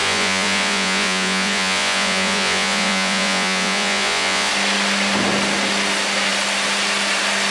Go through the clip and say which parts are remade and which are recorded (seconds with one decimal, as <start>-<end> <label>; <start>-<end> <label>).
0.0-4.5 remade; 4.5-7.5 recorded